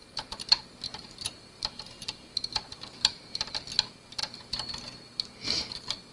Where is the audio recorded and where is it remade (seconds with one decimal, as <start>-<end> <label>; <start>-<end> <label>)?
0.0-3.7 remade; 3.7-6.1 recorded